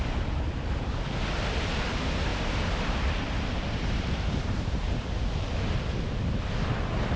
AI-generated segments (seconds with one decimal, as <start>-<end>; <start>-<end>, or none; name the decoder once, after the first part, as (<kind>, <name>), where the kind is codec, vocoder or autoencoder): 2.3-5.5 (vocoder, BigVGAN v2)